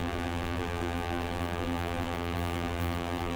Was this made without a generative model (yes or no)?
no